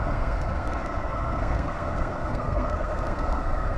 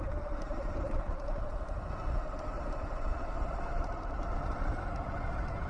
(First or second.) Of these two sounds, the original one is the second